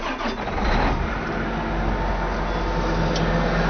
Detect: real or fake real